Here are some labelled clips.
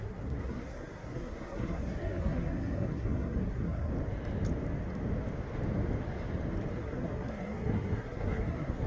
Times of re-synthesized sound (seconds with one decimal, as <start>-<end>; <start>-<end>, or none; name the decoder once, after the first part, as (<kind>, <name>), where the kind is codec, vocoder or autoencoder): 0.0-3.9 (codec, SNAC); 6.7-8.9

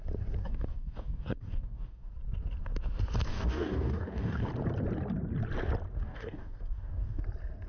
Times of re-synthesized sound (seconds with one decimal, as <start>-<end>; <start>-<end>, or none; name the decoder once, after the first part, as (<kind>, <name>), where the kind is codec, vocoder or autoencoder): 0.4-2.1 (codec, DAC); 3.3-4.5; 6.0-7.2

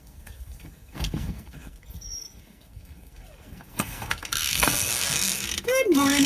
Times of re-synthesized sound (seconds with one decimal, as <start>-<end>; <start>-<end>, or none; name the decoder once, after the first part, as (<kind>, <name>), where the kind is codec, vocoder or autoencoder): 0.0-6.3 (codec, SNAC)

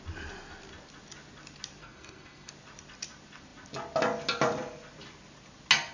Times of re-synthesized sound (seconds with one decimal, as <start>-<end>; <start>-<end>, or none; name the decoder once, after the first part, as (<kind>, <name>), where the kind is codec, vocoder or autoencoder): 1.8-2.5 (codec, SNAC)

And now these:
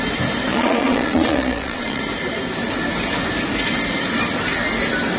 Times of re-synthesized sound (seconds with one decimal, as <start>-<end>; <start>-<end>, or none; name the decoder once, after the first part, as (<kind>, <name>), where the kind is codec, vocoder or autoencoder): 0.5-2.0 (vocoder, Vocos)

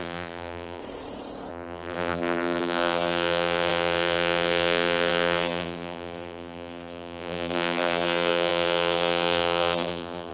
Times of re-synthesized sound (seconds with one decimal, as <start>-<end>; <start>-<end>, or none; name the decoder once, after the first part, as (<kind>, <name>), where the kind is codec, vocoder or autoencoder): 0.0-0.8 (vocoder, BigVGAN v2); 1.5-10.3